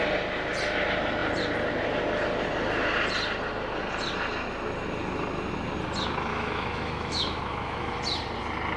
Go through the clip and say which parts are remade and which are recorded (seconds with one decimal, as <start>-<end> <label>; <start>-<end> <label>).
0.0-6.3 recorded; 6.3-8.0 remade; 8.0-8.8 recorded